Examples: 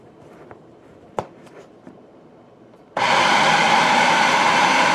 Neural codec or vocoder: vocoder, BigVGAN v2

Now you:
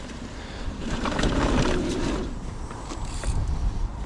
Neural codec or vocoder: vocoder, BigVGAN v2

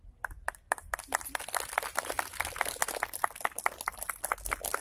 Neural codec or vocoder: none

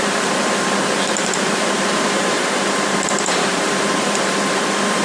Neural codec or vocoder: vocoder, BigVGAN v2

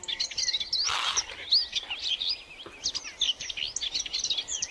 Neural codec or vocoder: none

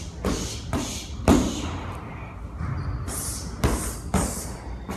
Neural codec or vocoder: none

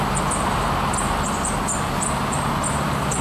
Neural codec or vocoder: none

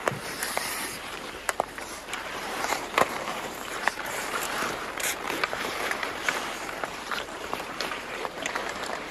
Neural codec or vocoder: vocoder, BigVGAN v2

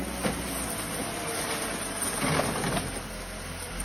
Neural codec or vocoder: none